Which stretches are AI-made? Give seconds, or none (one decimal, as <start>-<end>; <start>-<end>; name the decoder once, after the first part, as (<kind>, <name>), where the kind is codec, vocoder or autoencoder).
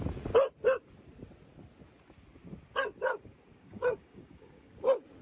3.5-4.8 (codec, DAC)